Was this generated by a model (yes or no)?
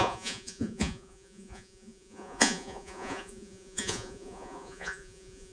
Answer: yes